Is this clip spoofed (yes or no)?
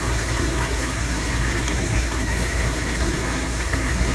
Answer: yes